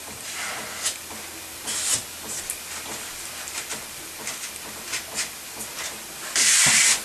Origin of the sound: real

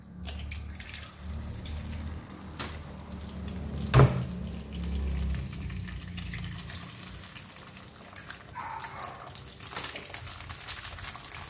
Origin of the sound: real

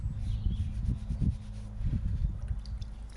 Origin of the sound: real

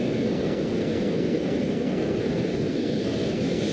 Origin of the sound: fake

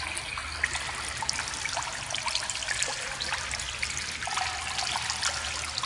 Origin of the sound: real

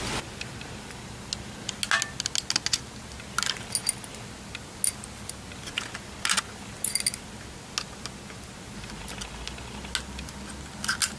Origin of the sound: real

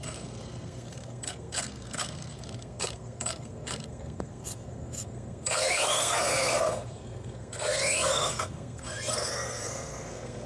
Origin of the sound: fake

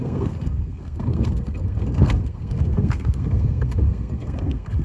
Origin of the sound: fake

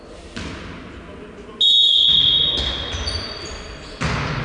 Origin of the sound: real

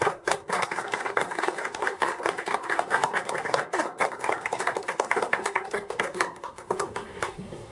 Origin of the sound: fake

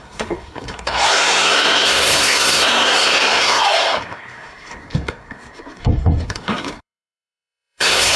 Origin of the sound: fake